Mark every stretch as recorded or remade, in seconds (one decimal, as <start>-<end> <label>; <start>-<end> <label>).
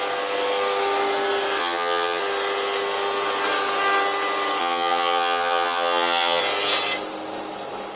0.0-1.6 recorded; 1.6-2.2 remade; 2.2-4.6 recorded; 4.6-6.4 remade; 6.4-8.0 recorded